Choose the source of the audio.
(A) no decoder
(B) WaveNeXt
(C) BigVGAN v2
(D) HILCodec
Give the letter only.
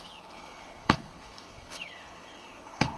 D